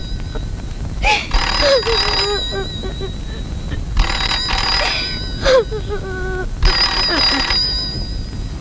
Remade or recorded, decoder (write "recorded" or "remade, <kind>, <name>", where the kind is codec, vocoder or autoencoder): recorded